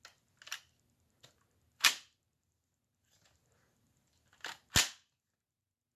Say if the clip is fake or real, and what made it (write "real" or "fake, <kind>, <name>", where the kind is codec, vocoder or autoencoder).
real